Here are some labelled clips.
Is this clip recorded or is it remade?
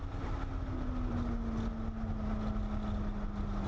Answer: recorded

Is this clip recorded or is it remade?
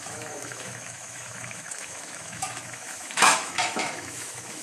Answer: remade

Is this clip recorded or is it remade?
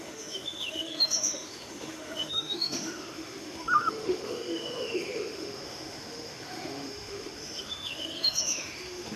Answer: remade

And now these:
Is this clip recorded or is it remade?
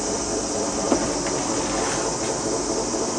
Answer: recorded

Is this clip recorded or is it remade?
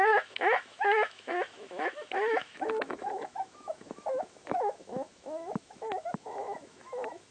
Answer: remade